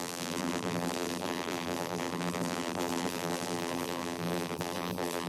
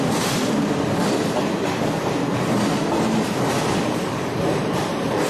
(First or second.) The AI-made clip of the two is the first